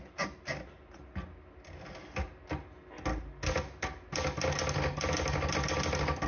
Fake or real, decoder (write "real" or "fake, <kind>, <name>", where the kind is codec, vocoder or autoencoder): real